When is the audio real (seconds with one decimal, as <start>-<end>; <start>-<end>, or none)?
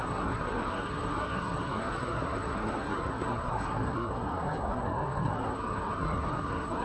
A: none